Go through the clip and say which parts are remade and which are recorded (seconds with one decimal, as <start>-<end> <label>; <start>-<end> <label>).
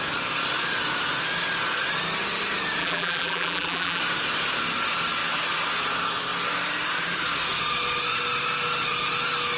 0.0-2.8 recorded; 2.8-4.0 remade; 4.0-9.6 recorded